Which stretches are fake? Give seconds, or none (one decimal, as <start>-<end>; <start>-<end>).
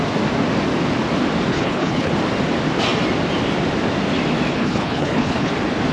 1.5-2.1; 4.5-5.5